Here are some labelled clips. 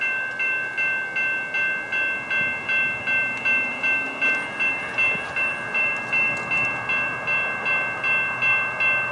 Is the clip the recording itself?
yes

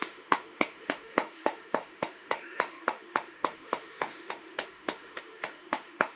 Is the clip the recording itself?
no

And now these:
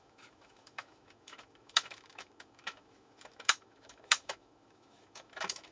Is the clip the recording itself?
no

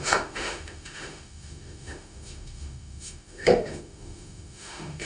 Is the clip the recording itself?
no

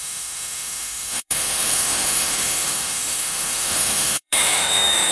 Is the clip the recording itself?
no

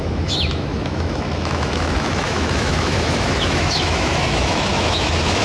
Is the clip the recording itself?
no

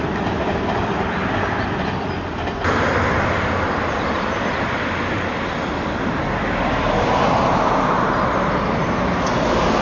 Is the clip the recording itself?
yes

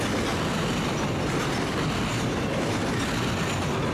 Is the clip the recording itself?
yes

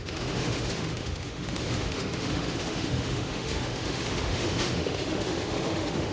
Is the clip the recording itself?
no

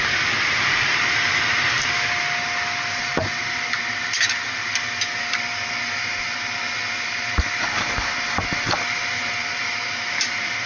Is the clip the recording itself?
yes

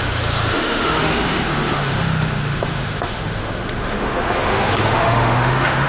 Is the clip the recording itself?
no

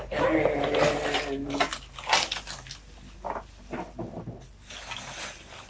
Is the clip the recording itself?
yes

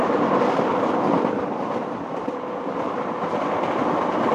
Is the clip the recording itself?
yes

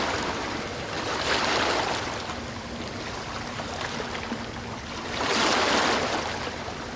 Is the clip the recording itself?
yes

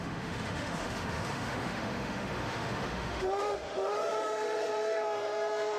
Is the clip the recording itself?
no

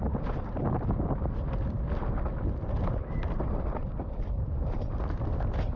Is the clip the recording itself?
yes